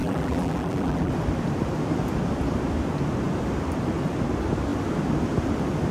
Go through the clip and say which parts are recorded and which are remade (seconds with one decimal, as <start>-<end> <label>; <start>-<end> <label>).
0.0-1.1 remade; 1.1-5.9 recorded